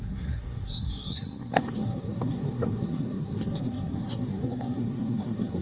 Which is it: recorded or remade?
remade